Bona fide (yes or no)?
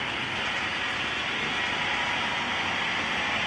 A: yes